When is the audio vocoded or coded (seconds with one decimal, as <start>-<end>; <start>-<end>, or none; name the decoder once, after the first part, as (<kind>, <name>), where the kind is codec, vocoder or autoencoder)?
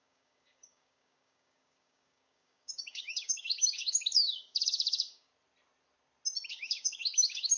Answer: 0.0-5.3 (codec, DAC); 6.5-7.6